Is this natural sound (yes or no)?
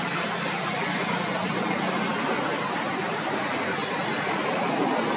yes